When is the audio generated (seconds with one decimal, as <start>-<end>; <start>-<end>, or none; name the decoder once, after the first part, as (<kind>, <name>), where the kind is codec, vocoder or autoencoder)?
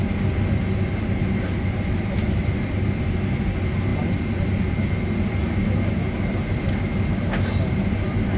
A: none